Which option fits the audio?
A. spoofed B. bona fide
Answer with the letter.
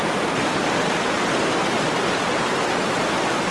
B